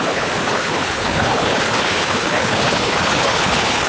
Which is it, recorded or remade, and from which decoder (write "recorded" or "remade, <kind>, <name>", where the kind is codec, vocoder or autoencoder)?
remade, codec, HILCodec